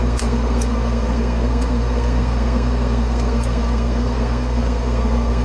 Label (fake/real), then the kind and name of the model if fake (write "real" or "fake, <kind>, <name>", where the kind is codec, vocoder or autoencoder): fake, codec, SNAC